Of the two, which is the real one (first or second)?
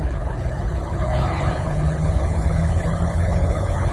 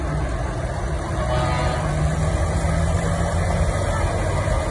second